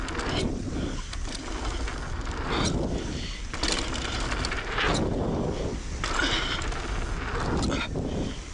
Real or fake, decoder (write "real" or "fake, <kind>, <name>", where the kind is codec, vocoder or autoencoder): real